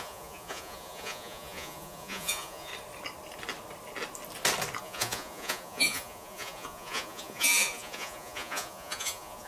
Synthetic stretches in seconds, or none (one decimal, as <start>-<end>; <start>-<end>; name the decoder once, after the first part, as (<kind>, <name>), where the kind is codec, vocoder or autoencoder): 0.0-2.7 (vocoder, Vocos); 4.8-9.5